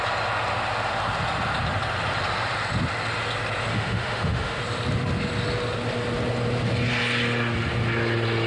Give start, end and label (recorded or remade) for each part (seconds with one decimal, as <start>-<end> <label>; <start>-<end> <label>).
0.0-3.7 recorded; 3.7-4.6 remade; 4.6-8.5 recorded